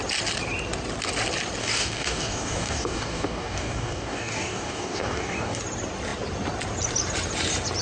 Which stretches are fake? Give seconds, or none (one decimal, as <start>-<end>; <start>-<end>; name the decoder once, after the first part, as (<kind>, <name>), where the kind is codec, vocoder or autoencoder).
1.6-5.6 (codec, DAC)